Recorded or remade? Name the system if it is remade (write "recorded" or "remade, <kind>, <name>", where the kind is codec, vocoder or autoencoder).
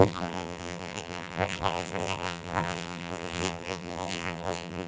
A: remade, vocoder, BigVGAN v2